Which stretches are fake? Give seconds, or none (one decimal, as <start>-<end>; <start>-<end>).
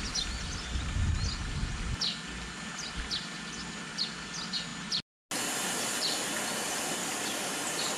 7.0-7.5